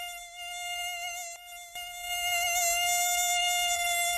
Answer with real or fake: real